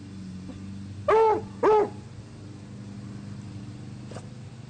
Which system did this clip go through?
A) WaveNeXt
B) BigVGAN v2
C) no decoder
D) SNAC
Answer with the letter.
C